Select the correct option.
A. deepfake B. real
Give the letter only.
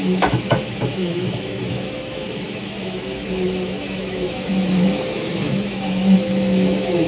A